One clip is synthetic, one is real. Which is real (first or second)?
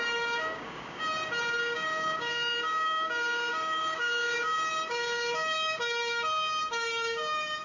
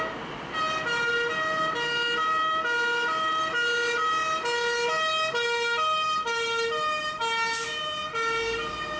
second